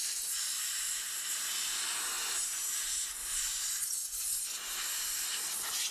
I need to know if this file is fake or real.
real